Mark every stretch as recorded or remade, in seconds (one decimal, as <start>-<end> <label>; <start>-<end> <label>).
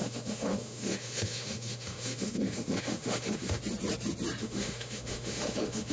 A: 0.0-3.6 remade; 3.6-4.4 recorded; 4.4-5.9 remade